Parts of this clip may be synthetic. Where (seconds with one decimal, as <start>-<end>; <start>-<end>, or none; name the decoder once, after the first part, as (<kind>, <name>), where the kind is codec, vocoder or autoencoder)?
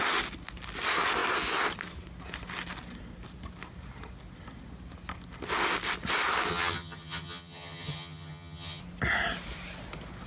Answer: 6.5-8.8 (vocoder, HiFi-GAN)